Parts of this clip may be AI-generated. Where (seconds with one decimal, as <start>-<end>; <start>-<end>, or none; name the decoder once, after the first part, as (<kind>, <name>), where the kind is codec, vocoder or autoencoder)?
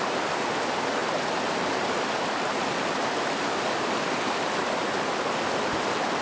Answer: none